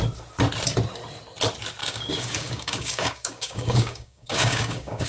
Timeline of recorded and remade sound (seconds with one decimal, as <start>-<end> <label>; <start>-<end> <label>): 0.0-1.8 recorded; 1.8-5.1 remade